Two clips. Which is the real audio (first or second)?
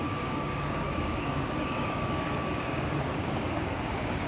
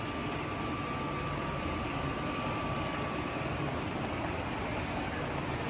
second